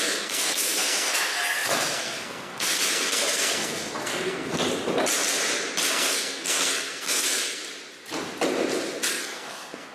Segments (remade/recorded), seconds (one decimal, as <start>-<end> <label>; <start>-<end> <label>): 0.0-4.6 remade; 4.6-5.9 recorded; 5.9-7.6 remade; 7.6-9.1 recorded; 9.1-9.9 remade

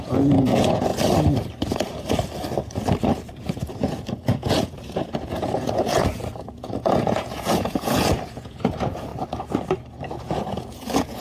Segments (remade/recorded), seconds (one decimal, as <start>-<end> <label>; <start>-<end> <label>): 0.0-0.9 remade; 0.9-3.3 recorded; 3.3-9.1 remade; 9.1-10.1 recorded; 10.1-11.2 remade

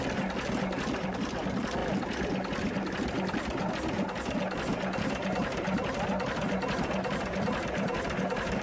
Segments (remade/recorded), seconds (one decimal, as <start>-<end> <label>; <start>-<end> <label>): 0.0-1.8 recorded; 1.8-3.7 remade; 3.7-8.6 recorded

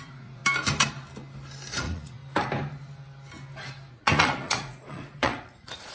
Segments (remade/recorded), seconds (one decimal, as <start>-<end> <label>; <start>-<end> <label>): 0.0-0.4 remade; 0.4-1.7 recorded; 1.7-2.2 remade; 2.2-3.9 recorded; 3.9-5.9 remade